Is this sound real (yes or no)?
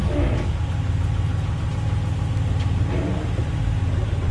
yes